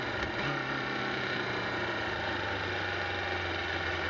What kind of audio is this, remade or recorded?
recorded